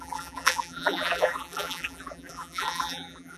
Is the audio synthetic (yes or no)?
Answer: yes